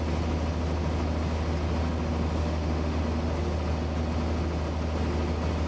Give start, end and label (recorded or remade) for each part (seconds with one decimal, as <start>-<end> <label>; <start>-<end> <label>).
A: 0.0-2.4 recorded; 2.4-3.0 remade; 3.0-5.7 recorded